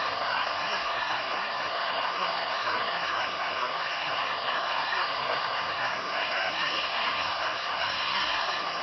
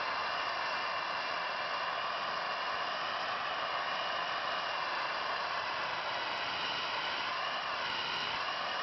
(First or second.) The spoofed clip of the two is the first